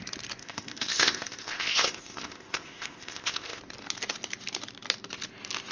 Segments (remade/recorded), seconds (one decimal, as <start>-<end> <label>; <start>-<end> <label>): 0.0-0.4 recorded; 0.4-3.6 remade; 3.6-5.7 recorded